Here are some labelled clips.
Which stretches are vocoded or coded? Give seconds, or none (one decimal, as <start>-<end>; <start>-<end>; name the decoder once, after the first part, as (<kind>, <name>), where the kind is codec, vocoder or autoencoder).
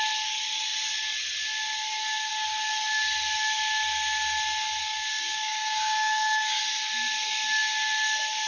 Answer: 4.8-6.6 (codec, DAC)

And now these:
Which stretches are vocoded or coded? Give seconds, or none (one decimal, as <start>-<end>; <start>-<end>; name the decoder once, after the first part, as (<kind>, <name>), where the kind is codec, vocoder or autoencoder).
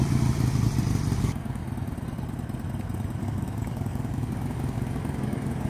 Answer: 1.2-1.6 (codec, DAC); 3.2-5.7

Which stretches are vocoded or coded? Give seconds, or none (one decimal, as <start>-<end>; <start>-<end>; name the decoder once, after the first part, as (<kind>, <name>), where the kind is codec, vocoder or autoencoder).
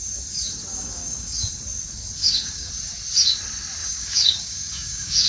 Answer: 0.7-1.5 (codec, DAC); 2.2-2.7; 3.8-5.3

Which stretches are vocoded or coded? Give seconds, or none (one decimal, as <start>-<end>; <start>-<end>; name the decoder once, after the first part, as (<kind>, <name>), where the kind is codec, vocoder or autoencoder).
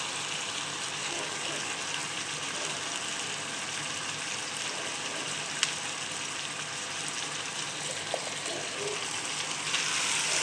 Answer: 1.0-1.7 (codec, DAC)